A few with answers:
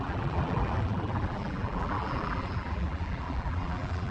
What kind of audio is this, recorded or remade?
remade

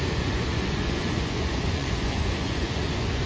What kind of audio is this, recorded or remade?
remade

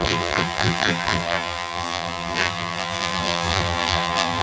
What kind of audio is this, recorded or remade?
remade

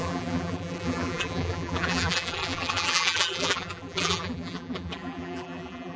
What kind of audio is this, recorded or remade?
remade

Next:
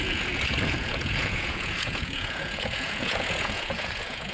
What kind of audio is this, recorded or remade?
remade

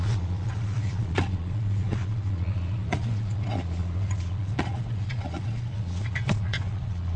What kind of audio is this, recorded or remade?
remade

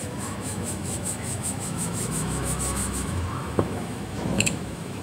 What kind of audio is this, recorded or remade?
remade